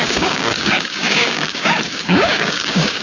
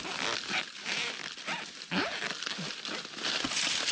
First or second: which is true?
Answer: second